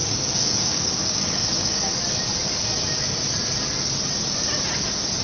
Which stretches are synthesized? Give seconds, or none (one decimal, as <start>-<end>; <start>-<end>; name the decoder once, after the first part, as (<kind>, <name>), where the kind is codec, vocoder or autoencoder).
0.0-1.9 (codec, DAC)